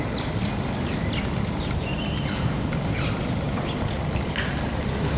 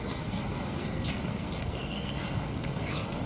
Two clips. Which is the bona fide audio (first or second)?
first